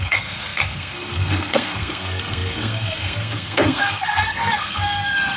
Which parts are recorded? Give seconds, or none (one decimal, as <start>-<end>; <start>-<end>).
none